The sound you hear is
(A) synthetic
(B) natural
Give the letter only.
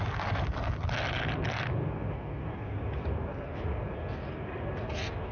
B